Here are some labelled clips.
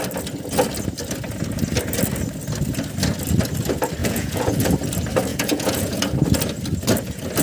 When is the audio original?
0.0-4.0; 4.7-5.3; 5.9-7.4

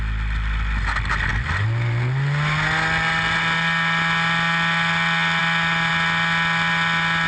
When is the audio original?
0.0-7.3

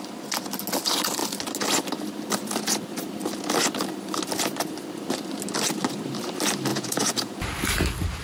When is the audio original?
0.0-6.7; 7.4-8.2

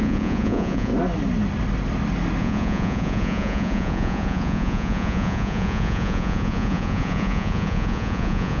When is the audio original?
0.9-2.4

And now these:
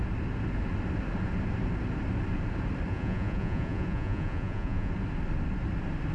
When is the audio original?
0.0-2.9; 4.9-6.1

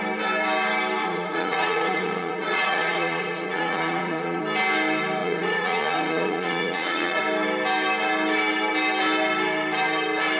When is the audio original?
0.0-1.0; 4.4-5.2; 7.2-10.4